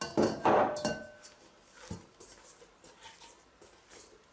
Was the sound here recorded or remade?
recorded